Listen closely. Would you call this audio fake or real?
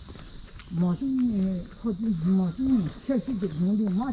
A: real